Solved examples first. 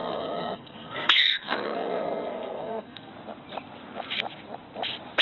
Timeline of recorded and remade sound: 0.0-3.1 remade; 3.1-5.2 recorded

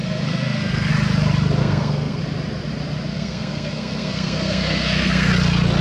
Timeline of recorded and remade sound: 0.0-0.9 remade; 0.9-1.6 recorded; 1.6-2.2 remade; 2.2-3.1 recorded; 3.1-5.3 remade; 5.3-5.8 recorded

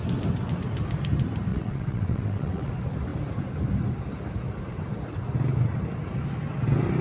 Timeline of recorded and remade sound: 0.0-1.5 recorded; 1.5-2.7 remade; 2.7-7.0 recorded

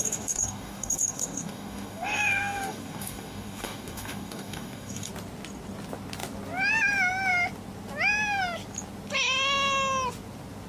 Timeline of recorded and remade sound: 0.0-5.1 remade; 5.1-10.7 recorded

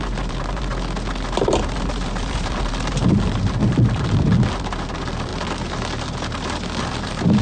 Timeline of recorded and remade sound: 0.0-0.7 remade; 0.7-1.5 recorded; 1.5-5.3 remade; 5.3-6.8 recorded; 6.8-7.4 remade

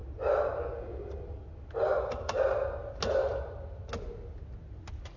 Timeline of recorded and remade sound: 0.0-5.2 recorded

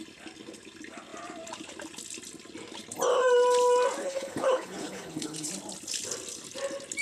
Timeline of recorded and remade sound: 0.0-4.0 recorded; 4.0-5.5 remade; 5.5-7.0 recorded

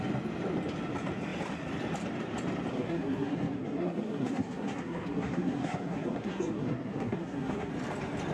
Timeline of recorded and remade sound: 0.0-2.7 recorded; 2.7-7.7 remade; 7.7-8.3 recorded